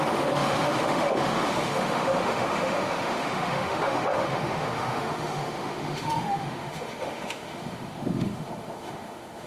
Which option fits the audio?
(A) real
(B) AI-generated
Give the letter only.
B